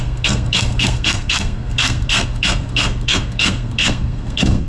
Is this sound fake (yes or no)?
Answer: yes